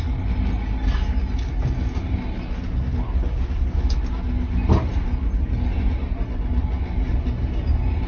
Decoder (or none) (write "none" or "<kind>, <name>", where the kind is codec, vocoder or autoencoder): none